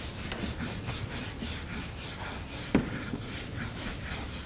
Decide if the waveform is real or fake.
real